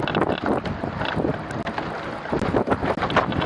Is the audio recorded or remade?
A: recorded